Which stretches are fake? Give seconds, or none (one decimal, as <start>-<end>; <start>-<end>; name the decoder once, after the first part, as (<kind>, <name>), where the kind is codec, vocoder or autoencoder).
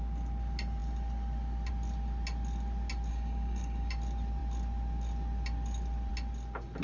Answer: 3.1-3.9 (codec, DAC)